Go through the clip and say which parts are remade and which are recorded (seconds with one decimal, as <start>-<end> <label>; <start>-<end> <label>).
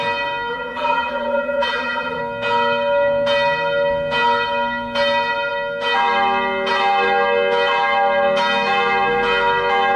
0.0-0.5 recorded; 0.5-2.2 remade; 2.2-10.0 recorded